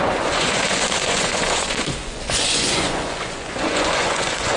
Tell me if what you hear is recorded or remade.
remade